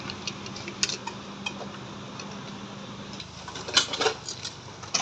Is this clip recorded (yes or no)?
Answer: yes